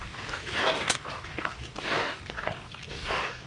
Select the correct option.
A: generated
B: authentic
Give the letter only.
A